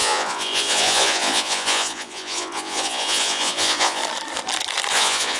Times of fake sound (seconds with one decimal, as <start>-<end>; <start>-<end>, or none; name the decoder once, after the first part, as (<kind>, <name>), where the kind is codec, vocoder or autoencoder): 0.0-4.0 (vocoder, Vocos); 4.9-5.4